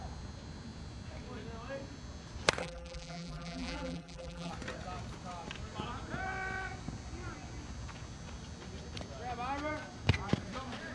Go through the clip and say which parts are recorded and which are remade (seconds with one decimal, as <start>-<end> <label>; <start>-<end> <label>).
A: 0.0-2.6 recorded; 2.6-4.5 remade; 4.5-10.9 recorded